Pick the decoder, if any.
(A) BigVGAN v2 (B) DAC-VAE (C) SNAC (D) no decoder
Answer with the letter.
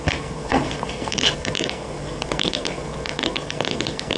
C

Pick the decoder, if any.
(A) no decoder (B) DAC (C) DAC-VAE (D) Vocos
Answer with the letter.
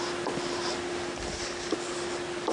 A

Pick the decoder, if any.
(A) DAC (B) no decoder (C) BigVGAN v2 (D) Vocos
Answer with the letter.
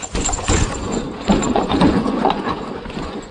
D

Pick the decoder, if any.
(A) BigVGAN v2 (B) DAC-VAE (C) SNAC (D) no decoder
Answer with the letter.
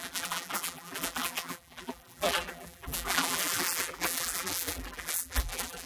A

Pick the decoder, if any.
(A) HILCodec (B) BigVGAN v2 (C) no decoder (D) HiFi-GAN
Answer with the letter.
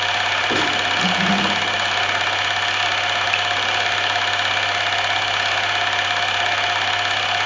C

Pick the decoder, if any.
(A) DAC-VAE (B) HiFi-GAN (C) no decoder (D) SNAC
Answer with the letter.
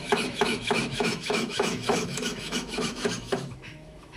A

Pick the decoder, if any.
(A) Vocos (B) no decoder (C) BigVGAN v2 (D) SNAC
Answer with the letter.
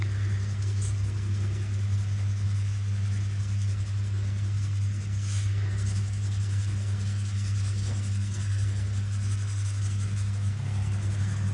D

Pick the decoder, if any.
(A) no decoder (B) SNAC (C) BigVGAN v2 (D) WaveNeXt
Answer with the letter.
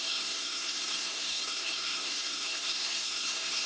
B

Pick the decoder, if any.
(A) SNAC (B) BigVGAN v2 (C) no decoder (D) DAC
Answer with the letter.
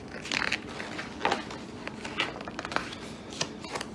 C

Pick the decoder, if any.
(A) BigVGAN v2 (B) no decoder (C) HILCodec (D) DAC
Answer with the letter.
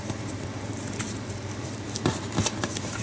A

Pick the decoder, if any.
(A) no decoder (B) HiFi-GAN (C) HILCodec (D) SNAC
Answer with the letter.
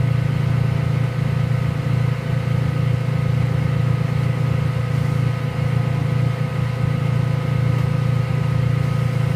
A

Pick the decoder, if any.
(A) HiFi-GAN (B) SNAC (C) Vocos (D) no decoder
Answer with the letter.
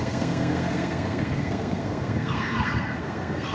B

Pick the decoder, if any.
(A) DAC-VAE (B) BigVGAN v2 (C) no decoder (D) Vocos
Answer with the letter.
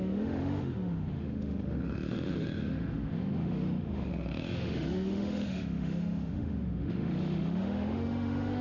A